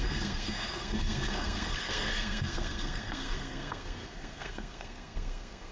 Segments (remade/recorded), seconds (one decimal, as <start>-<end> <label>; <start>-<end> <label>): 0.0-5.7 remade